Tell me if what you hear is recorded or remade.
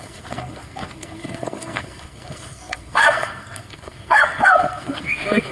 remade